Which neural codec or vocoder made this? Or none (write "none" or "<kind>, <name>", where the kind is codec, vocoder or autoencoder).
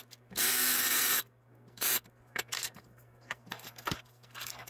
codec, SNAC